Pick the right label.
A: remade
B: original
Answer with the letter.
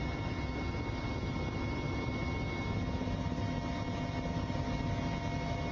B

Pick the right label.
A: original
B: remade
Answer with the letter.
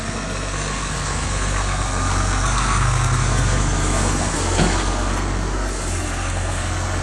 B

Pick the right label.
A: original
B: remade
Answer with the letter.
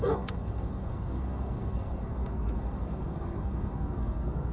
B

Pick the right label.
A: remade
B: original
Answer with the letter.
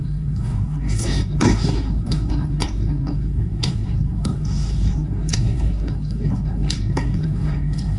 A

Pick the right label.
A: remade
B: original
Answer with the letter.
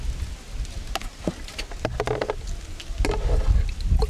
B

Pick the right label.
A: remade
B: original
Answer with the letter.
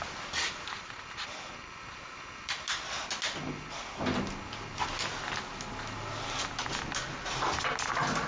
B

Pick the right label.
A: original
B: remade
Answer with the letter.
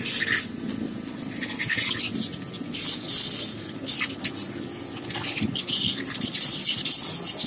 A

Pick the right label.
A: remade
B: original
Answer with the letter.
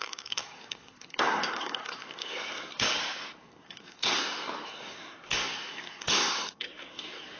A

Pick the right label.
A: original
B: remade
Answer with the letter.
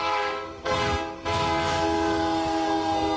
B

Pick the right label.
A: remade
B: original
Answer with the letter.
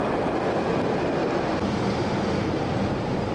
B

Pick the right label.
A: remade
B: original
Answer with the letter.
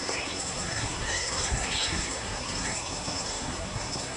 A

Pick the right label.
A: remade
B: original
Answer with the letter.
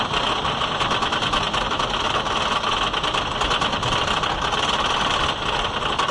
B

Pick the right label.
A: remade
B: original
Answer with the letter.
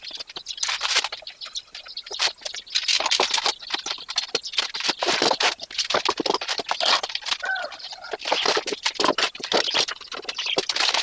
B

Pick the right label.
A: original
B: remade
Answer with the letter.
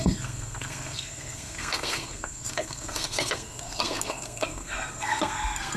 B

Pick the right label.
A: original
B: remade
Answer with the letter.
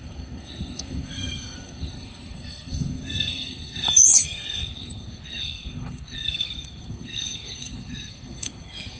B